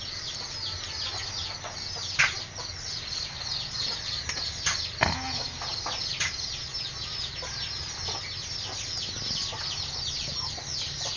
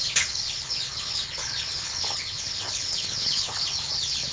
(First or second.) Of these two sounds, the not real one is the second